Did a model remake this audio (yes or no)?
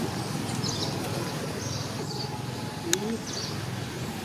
no